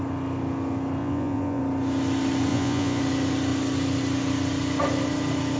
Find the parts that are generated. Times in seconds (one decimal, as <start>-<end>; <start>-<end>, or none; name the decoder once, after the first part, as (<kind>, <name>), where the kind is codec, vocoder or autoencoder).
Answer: 1.0-1.6 (vocoder, Vocos); 2.5-3.0